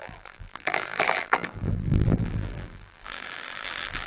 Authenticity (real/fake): fake